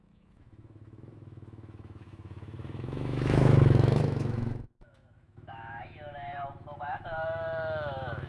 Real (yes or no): no